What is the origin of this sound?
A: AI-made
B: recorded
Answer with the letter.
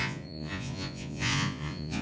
A